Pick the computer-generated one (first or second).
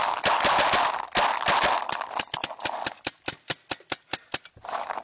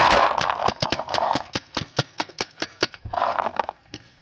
second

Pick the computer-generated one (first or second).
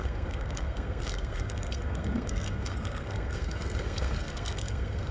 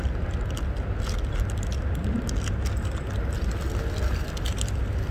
first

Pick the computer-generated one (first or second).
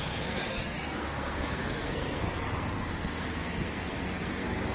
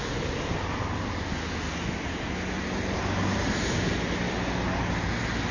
first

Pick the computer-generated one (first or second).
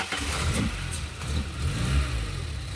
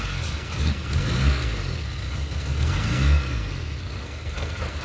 second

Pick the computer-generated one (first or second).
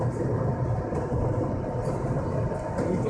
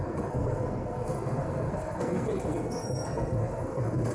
second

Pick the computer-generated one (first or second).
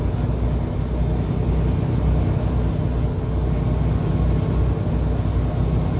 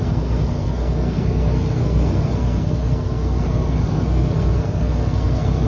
second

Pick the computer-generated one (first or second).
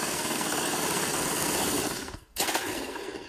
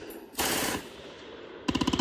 first